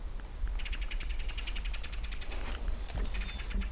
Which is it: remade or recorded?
recorded